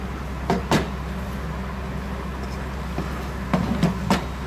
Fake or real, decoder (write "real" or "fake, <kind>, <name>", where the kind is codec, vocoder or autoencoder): real